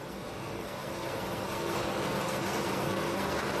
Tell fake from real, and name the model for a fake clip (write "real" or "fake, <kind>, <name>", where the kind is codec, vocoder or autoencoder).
fake, codec, SNAC